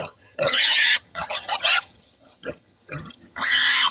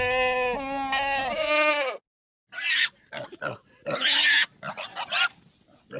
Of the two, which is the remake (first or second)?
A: first